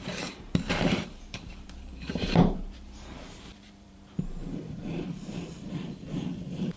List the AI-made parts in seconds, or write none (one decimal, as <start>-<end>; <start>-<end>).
0.0-6.8